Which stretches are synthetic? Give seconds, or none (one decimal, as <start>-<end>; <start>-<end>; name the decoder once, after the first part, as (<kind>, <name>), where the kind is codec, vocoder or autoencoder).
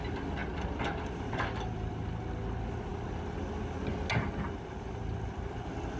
none